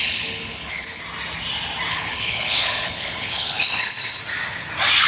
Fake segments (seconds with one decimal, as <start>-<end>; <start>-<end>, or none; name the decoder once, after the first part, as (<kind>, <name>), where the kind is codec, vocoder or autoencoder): 0.0-1.0 (codec, HILCodec); 1.9-4.2